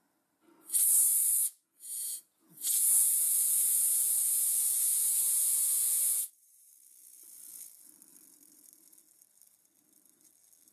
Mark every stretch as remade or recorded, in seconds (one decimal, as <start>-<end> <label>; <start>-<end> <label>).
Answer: 0.0-1.4 recorded; 1.4-6.7 remade; 6.7-10.7 recorded